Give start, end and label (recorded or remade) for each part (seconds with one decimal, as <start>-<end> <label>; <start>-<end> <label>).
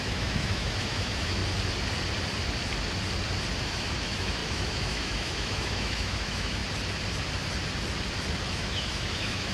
0.0-1.4 remade; 1.4-3.6 recorded; 3.6-6.6 remade; 6.6-8.5 recorded; 8.5-9.5 remade